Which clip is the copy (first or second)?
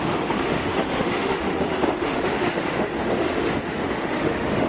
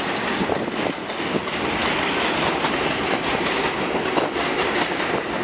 first